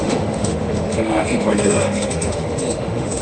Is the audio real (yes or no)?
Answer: no